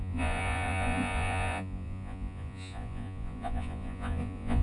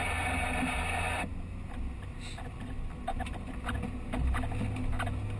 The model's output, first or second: first